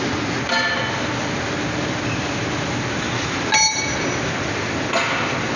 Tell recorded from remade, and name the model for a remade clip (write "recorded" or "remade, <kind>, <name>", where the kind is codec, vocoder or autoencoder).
recorded